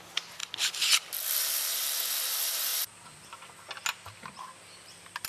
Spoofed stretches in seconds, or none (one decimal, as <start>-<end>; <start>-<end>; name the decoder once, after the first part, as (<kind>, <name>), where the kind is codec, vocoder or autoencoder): none